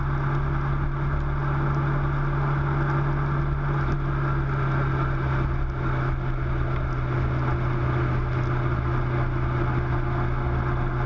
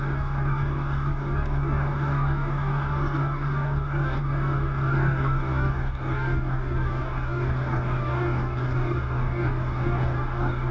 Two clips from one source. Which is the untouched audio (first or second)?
first